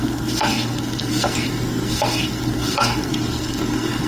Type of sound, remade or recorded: remade